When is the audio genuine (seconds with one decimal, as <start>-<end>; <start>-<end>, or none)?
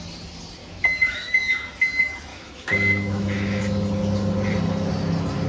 0.0-0.6; 1.4-2.3; 3.6-5.5